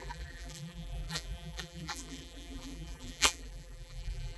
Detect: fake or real fake